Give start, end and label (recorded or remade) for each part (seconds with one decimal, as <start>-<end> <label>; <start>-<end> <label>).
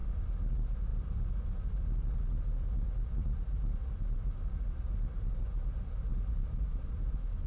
0.0-6.1 recorded; 6.1-7.5 remade